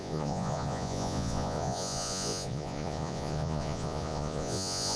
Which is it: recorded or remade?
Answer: remade